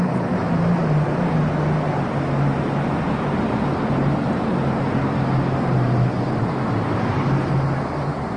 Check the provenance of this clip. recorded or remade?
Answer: recorded